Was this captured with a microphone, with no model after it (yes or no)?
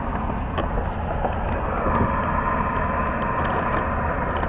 yes